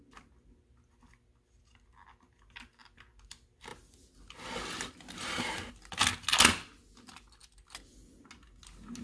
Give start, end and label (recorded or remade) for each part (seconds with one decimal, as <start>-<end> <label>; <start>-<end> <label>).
0.0-9.0 recorded